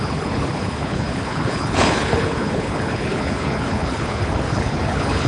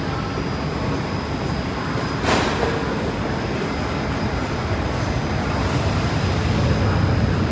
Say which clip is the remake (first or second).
first